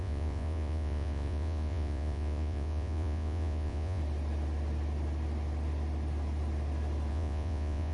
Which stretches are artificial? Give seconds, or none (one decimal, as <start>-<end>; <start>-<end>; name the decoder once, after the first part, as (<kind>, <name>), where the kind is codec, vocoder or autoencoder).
0.0-4.0 (vocoder, Vocos); 7.1-7.9